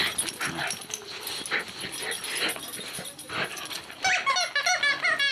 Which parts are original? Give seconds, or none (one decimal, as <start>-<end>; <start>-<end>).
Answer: 0.0-5.3

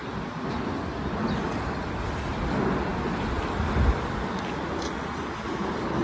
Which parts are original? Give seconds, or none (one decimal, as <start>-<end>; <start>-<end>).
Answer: 0.0-6.0

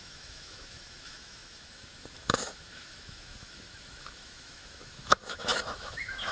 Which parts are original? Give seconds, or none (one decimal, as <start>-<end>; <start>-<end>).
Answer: none

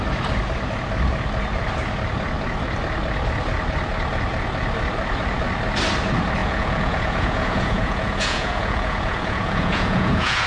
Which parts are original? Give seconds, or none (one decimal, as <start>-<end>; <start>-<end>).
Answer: 0.0-6.4

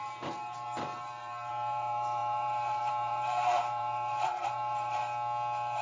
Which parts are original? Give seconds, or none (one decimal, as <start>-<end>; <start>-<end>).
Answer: 5.0-5.8

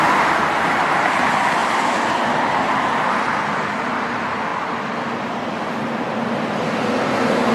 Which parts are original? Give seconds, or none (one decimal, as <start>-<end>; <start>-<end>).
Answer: 0.0-4.5; 5.5-7.5

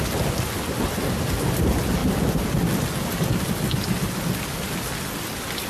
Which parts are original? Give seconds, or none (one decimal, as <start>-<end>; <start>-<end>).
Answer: 0.0-5.7